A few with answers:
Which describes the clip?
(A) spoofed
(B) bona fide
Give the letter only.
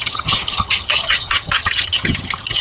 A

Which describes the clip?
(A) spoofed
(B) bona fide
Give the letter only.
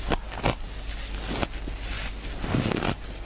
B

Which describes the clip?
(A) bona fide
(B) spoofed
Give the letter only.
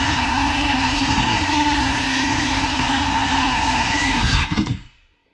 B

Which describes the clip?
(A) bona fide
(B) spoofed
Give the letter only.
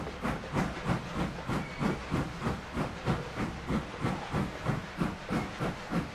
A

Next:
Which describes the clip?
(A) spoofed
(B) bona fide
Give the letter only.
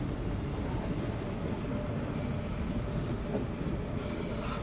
B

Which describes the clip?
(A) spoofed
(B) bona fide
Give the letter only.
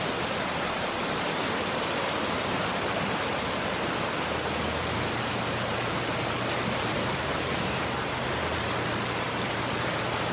B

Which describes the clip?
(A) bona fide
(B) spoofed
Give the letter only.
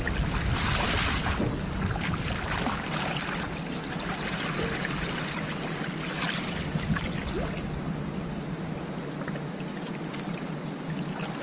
A